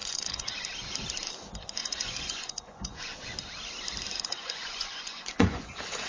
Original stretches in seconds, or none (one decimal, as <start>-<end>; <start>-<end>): 0.5-1.8; 3.2-4.3